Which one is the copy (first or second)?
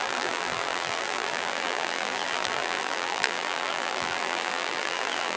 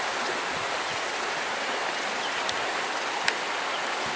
first